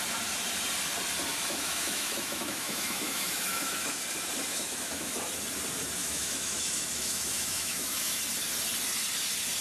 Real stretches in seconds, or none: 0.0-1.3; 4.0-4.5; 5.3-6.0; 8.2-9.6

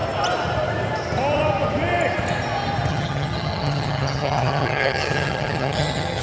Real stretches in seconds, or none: 0.0-2.9

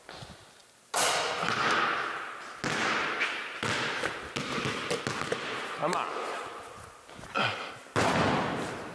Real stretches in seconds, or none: 0.0-8.9

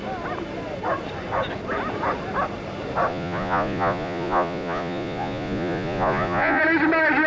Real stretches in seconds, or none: 0.0-3.1; 6.6-7.3

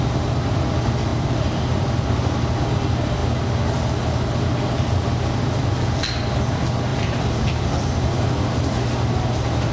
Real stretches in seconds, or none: 0.0-1.1; 2.4-6.9; 8.1-9.7

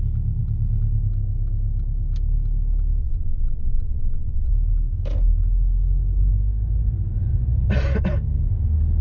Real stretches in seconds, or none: 0.0-3.0; 4.5-9.0